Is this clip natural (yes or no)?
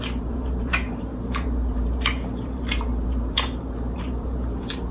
no